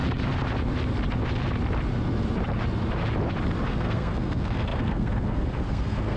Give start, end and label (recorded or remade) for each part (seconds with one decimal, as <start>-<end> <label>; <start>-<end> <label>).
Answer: 0.0-3.7 recorded; 3.7-6.2 remade